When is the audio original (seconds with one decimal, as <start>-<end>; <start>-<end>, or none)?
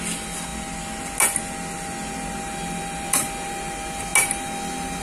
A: 0.0-5.0